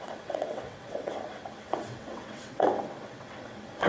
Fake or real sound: fake